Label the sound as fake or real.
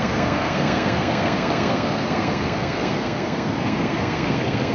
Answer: fake